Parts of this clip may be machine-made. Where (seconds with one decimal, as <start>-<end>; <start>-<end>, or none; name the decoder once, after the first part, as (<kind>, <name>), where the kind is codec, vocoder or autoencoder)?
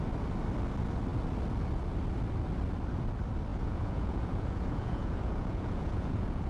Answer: 3.5-6.5 (vocoder, Vocos)